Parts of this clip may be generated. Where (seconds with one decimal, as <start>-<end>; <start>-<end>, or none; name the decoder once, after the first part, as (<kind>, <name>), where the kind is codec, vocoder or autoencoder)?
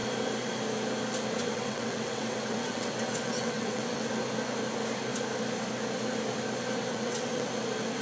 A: 1.4-4.1 (vocoder, WaveNeXt); 6.9-7.5